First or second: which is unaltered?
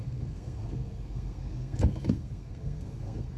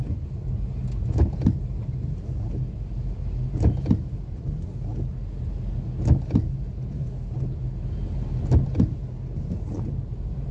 second